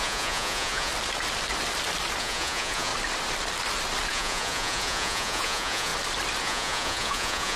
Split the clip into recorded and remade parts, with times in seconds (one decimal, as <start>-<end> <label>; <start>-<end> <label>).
0.0-0.9 remade; 0.9-2.2 recorded; 2.2-2.9 remade; 2.9-4.1 recorded; 4.1-5.9 remade; 5.9-6.4 recorded; 6.4-7.6 remade